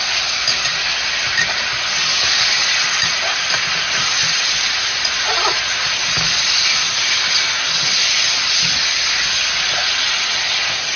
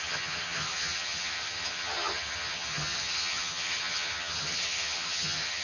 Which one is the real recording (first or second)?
first